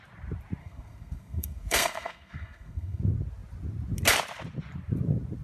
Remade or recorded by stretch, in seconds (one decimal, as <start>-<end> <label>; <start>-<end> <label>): 0.0-0.6 recorded; 0.6-3.0 remade; 3.0-5.4 recorded